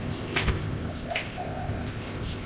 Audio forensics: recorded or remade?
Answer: remade